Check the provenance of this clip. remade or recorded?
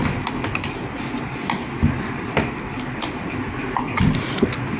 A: recorded